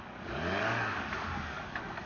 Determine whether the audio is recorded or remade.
remade